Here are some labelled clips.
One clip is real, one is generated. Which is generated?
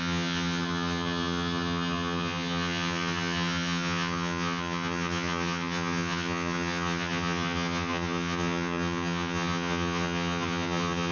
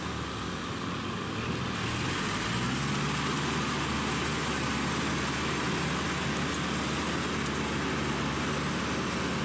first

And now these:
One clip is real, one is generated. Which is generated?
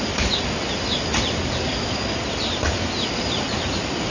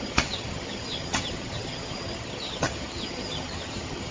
second